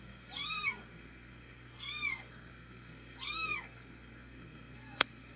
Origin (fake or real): fake